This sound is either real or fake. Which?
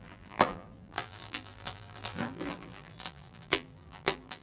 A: fake